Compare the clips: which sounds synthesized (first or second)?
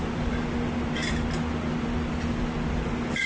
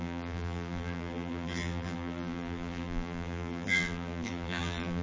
second